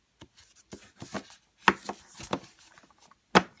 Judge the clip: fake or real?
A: real